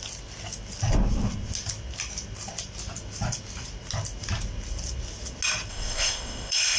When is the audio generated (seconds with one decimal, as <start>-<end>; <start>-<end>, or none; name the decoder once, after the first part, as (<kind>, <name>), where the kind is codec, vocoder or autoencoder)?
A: 5.7-6.8 (codec, ZipCodec)